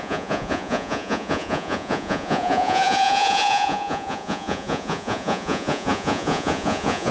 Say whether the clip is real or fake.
fake